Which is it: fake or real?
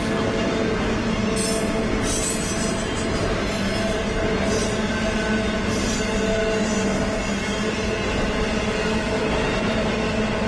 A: real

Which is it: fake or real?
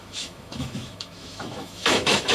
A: fake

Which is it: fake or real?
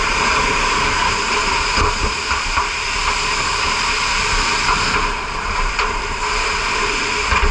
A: fake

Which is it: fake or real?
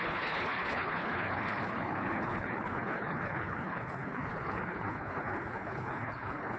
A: fake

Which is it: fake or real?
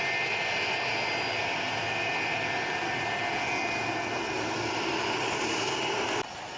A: real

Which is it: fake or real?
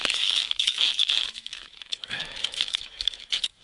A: fake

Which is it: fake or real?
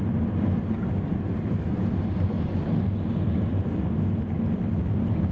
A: fake